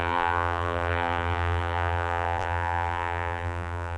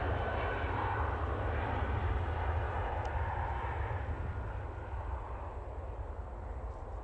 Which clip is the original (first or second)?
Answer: second